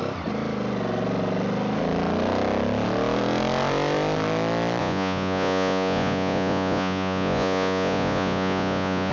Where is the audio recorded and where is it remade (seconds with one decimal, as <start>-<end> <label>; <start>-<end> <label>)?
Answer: 0.0-4.8 recorded; 4.8-9.1 remade